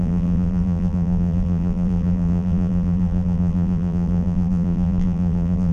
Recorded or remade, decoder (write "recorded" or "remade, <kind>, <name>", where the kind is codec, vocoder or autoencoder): remade, vocoder, BigVGAN v2